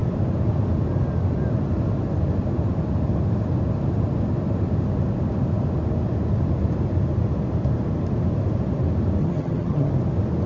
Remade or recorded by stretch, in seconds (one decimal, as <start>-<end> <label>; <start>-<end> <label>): 0.0-9.2 recorded; 9.2-9.9 remade; 9.9-10.5 recorded

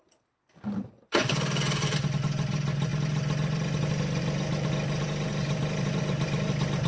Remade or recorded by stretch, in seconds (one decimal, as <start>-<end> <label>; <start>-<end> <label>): 0.0-6.9 recorded

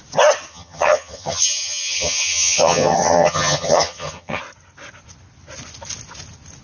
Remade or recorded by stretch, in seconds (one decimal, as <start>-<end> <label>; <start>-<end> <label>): 0.0-0.5 recorded; 0.5-4.4 remade; 4.4-6.6 recorded

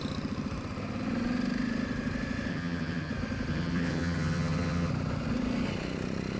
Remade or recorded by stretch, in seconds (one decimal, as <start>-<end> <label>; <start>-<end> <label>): 0.0-2.5 recorded; 2.5-3.1 remade; 3.1-3.5 recorded; 3.5-4.9 remade; 4.9-6.4 recorded